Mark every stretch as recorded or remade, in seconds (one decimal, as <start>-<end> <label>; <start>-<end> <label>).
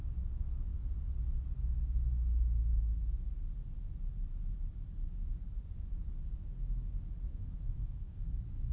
0.0-7.3 recorded; 7.3-8.2 remade; 8.2-8.7 recorded